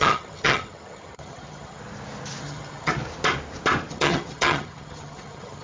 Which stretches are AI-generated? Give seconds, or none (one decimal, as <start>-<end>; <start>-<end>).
0.0-1.8; 2.4-2.9; 3.9-5.6